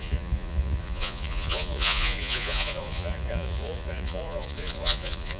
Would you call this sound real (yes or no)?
no